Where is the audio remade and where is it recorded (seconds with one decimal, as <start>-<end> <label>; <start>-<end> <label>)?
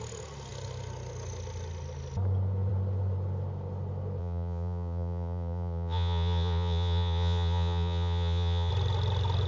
0.0-4.2 recorded; 4.2-8.7 remade; 8.7-9.5 recorded